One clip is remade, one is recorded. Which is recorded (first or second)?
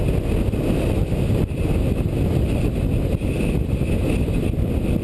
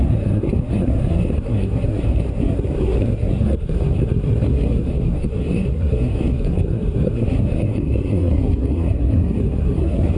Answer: first